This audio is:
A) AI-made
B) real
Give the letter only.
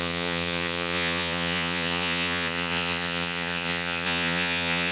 A